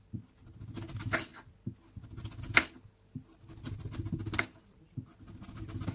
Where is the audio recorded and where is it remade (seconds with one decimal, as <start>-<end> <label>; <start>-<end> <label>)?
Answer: 0.0-5.9 recorded